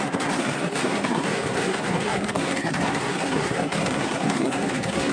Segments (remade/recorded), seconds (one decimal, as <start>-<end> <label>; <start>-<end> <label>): 0.0-5.1 remade